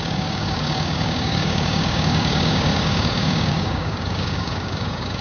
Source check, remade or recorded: remade